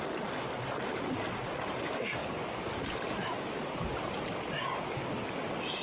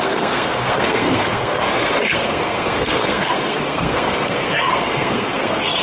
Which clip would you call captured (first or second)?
first